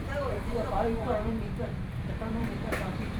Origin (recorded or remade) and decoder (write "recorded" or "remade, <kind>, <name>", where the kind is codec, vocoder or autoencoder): remade, vocoder, BigVGAN v2